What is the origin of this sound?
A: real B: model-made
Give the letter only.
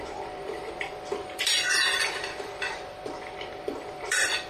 B